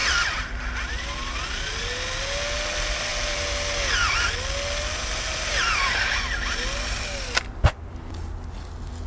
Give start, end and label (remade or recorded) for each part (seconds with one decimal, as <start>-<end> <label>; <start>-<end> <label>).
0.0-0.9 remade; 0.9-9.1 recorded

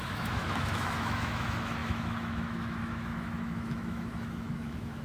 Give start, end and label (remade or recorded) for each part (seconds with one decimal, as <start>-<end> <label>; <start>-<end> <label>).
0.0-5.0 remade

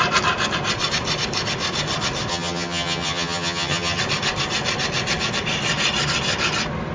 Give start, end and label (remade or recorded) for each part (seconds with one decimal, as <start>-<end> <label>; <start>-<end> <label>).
0.0-2.3 recorded; 2.3-4.0 remade; 4.0-6.9 recorded

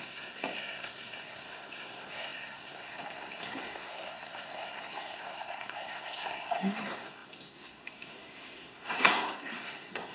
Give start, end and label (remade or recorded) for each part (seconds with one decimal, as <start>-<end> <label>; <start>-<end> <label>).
0.0-10.1 remade